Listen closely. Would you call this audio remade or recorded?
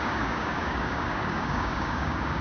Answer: remade